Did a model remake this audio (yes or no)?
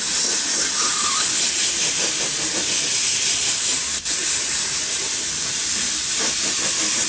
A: no